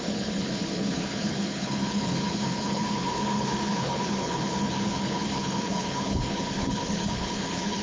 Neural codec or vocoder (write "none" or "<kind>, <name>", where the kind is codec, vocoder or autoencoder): codec, HILCodec